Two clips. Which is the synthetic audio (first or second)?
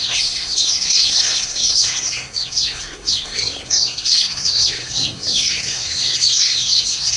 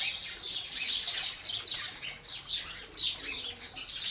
first